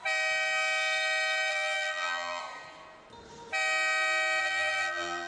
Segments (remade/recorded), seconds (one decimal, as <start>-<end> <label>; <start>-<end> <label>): 0.0-1.5 recorded; 1.5-2.4 remade; 2.4-4.4 recorded; 4.4-5.3 remade